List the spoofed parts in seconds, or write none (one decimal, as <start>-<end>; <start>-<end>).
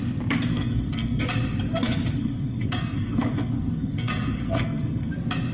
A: 0.5-1.2; 2.2-5.1